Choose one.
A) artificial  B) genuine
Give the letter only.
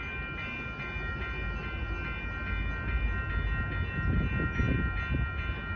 B